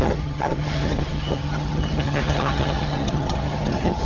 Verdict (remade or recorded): remade